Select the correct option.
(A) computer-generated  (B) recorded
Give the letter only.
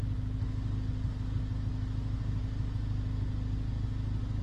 B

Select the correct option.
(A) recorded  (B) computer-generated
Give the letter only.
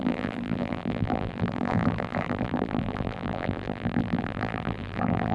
B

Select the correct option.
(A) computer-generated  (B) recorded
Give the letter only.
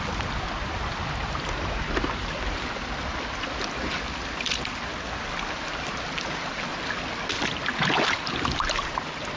B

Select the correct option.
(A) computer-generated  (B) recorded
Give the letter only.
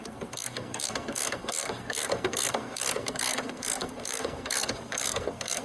A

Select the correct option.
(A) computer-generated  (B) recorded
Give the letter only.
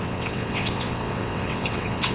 A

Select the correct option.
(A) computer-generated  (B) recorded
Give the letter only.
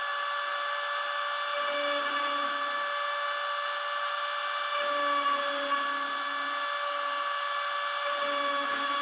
B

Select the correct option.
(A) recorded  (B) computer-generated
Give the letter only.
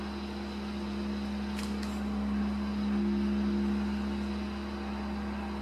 A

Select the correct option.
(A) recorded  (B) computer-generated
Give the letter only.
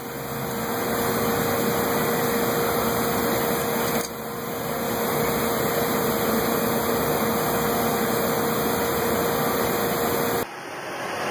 A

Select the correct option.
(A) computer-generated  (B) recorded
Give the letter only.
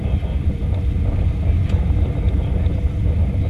B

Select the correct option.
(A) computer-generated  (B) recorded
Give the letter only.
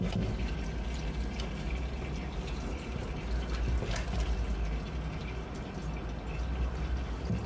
B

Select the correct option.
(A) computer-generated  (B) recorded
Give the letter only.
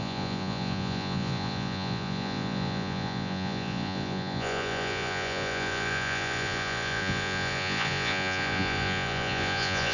A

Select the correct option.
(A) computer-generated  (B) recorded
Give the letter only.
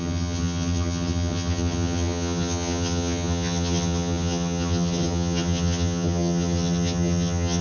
A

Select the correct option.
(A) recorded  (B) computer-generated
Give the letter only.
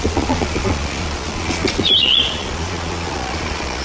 B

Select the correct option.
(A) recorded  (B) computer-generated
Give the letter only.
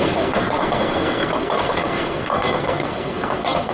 B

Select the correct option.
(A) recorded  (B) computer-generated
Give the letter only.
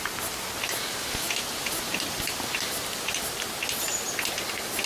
A